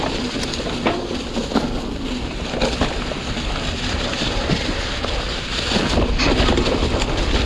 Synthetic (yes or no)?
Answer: no